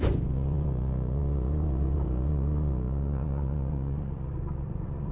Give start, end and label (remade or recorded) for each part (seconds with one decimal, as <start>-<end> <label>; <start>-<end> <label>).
0.0-5.1 remade